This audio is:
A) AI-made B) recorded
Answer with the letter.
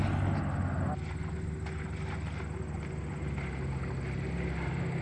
B